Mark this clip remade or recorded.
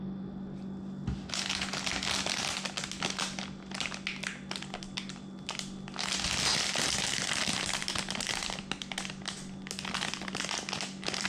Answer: recorded